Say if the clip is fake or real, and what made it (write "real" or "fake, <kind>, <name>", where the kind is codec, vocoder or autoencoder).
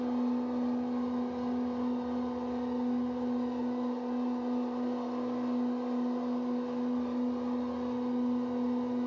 real